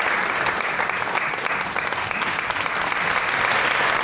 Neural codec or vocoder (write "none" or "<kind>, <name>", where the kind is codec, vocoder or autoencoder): none